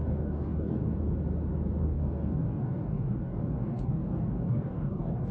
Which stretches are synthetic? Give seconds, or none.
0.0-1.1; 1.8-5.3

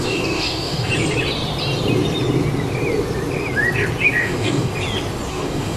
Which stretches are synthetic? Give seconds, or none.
0.0-0.9; 4.2-4.7; 5.3-5.8

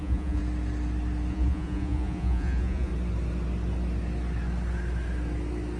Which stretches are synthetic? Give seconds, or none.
0.0-0.4; 1.3-2.9

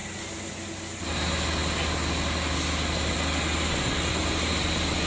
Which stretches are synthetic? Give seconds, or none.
none

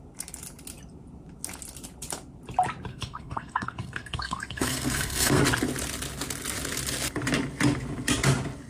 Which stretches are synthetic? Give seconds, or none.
2.9-5.4

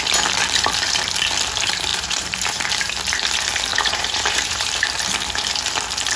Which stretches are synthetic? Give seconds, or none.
1.9-2.6; 3.7-5.1

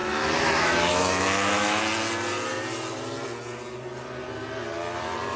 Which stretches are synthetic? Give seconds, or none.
0.0-1.8